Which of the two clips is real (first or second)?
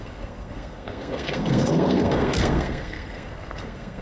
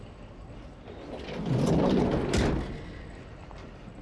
second